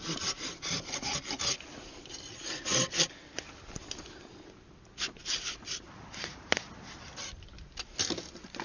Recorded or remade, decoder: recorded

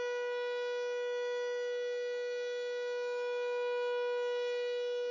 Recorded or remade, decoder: recorded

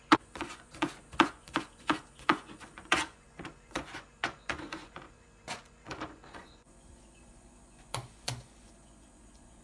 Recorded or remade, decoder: remade, vocoder, Vocos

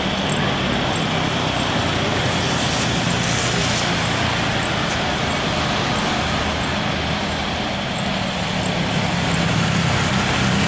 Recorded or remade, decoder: recorded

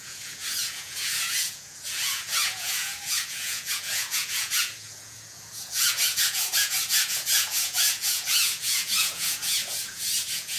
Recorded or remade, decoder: remade, vocoder, Vocos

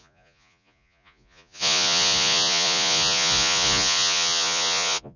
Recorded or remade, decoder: remade, vocoder, Vocos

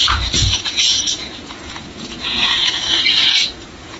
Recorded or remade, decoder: remade, vocoder, Vocos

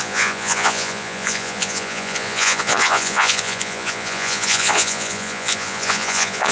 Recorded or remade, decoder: remade, vocoder, Vocos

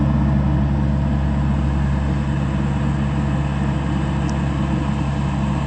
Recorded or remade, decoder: recorded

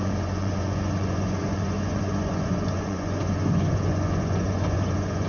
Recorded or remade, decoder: remade, vocoder, Vocos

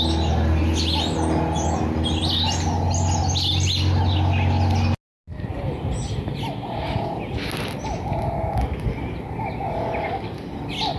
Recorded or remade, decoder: recorded